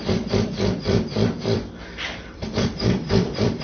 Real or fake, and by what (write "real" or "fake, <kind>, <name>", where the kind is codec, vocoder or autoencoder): fake, vocoder, BigVGAN v2